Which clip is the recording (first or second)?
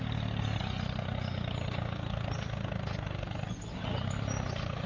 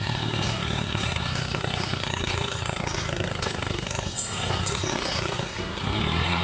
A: first